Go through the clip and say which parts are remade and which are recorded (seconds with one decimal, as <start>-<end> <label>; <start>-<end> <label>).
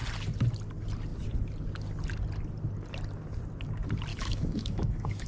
0.0-4.1 recorded; 4.1-5.3 remade